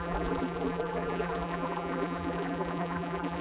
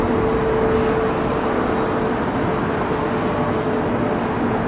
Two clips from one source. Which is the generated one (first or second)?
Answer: first